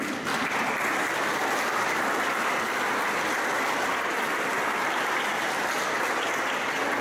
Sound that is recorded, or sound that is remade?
recorded